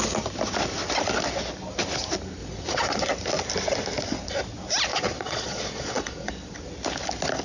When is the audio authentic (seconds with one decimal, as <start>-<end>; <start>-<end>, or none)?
0.0-2.4; 3.1-4.9; 6.3-7.4